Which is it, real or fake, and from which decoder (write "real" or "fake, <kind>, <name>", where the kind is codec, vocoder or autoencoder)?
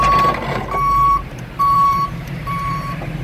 fake, vocoder, BigVGAN v2